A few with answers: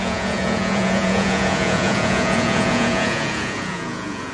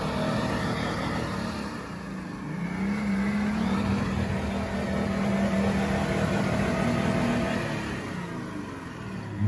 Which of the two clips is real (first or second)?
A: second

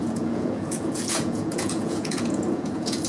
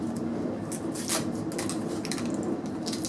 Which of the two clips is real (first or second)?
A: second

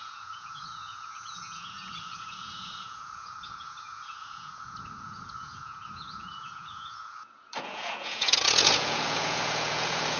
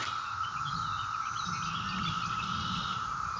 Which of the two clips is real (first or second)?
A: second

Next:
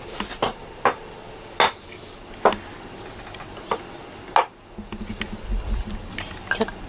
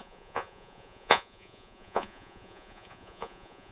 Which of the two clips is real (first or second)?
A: first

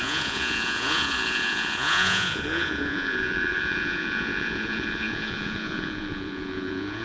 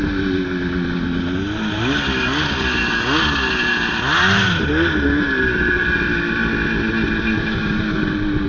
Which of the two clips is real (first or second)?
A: second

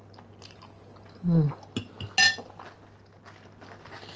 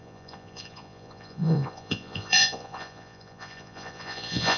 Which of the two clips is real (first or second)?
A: first